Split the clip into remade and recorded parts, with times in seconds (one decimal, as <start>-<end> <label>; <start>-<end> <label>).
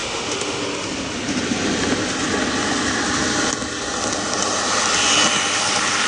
0.0-0.6 remade; 0.6-6.1 recorded